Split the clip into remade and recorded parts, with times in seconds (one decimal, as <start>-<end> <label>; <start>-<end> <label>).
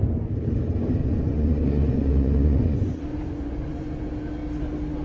0.0-1.0 recorded; 1.0-4.0 remade; 4.0-5.0 recorded